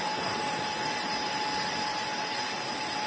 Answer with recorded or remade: recorded